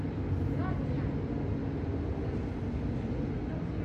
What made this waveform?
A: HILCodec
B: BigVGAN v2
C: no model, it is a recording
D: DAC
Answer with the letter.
C